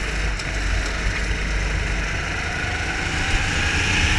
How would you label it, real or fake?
real